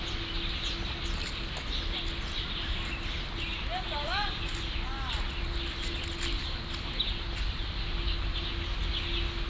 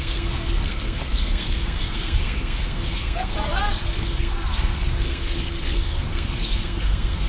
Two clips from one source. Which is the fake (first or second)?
second